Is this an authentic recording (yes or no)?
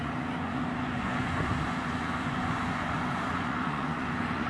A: no